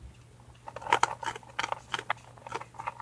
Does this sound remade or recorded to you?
recorded